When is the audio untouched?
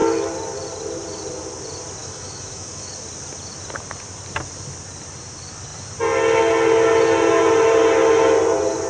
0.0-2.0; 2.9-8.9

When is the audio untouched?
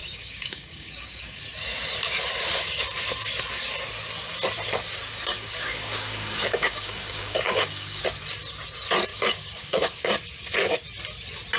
1.4-5.3; 8.0-9.1; 10.1-11.6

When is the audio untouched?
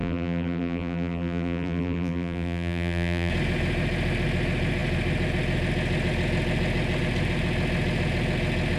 3.3-8.8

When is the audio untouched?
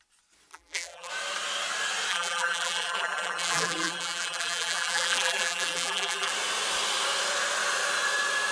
0.0-0.5; 1.1-2.1; 6.3-8.5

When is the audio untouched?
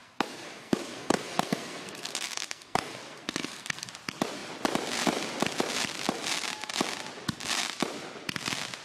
3.9-8.8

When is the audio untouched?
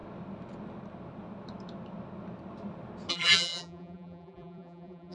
0.0-3.1